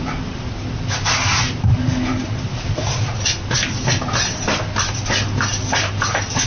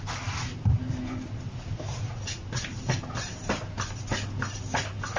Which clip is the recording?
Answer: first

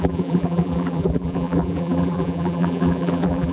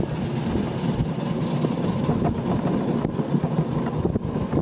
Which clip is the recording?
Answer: second